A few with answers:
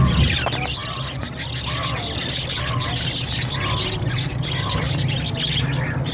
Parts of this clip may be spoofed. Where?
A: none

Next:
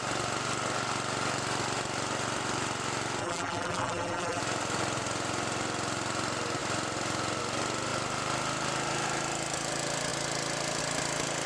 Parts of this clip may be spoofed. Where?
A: 3.2-4.4 (vocoder, BigVGAN v2)